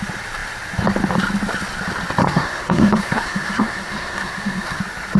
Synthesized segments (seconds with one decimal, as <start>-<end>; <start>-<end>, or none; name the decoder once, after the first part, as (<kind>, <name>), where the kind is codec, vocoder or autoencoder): 2.2-4.8 (codec, SNAC)